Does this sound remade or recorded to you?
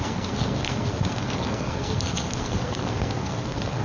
remade